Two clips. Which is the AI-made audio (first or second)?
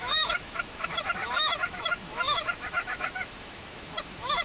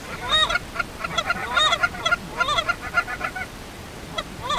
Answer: first